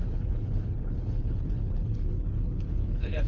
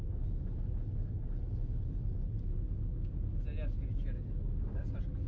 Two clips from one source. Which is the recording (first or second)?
second